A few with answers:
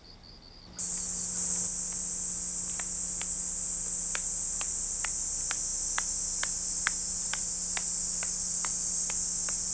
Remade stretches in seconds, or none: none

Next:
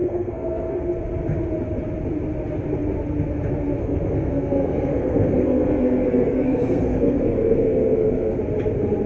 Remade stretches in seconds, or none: 0.0-0.8 (codec, SNAC); 3.8-8.4

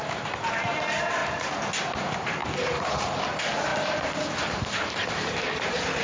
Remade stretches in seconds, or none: 0.0-1.2 (vocoder, BigVGAN v2); 1.8-2.4; 3.0-6.0